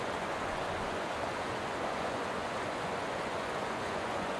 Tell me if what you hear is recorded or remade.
remade